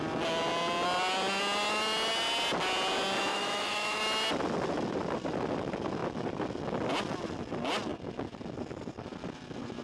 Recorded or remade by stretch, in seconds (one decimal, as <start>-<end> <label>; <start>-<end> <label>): 0.0-3.3 recorded; 3.3-4.0 remade; 4.0-9.8 recorded